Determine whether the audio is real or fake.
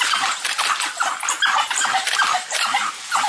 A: real